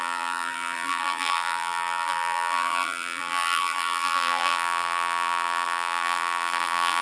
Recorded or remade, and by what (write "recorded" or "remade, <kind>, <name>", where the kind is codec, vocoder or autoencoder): remade, vocoder, BigVGAN v2